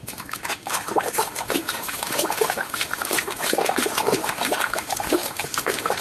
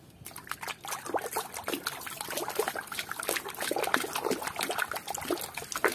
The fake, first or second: first